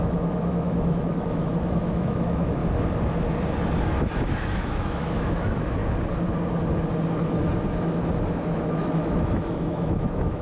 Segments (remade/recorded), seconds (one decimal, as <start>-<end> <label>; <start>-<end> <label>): 0.0-2.6 remade; 2.6-3.8 recorded; 3.8-5.8 remade; 5.8-8.3 recorded; 8.3-10.4 remade